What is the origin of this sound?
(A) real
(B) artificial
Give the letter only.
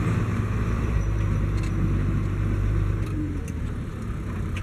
B